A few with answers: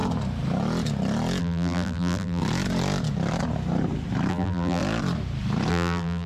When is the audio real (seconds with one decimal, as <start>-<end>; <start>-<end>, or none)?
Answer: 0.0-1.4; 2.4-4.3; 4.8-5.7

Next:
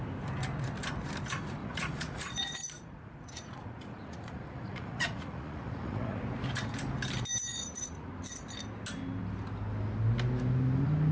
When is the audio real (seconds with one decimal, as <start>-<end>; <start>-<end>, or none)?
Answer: 0.0-1.6; 6.2-7.5; 8.1-11.1

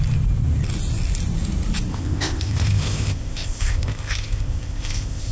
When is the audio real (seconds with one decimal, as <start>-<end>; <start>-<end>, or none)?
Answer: 0.0-1.9